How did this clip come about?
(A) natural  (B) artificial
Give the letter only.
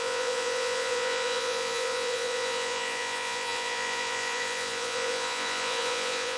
B